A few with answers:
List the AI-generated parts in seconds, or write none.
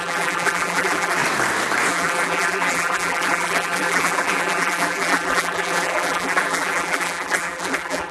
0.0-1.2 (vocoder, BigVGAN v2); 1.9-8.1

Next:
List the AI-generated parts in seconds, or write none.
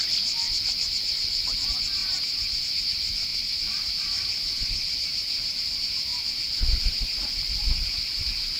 3.3-5.6 (vocoder, BigVGAN v2)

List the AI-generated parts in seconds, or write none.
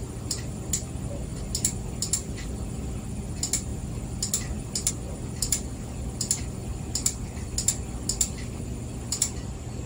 none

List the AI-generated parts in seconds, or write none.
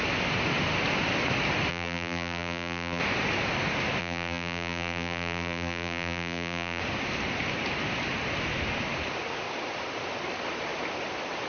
1.7-3.0 (vocoder, BigVGAN v2); 4.0-6.8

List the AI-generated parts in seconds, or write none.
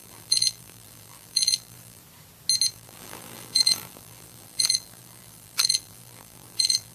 0.0-2.0 (vocoder, BigVGAN v2); 2.7-6.9